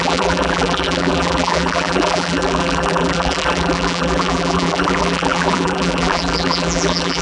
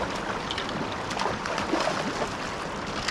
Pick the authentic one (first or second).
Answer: second